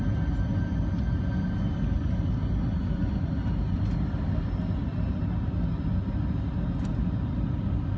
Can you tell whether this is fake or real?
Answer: real